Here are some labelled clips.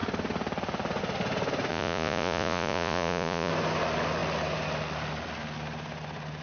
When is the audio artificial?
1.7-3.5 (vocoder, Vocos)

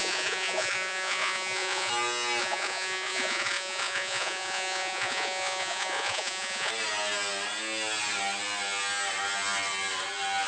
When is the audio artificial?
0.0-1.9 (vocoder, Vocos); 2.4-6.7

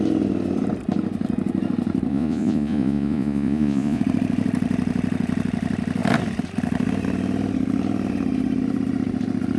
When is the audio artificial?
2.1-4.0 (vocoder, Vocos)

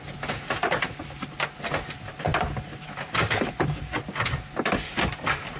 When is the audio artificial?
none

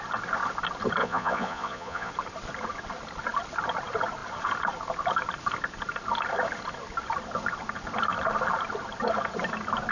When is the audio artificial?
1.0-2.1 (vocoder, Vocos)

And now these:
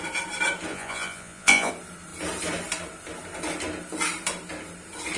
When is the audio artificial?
0.7-1.7 (vocoder, Vocos)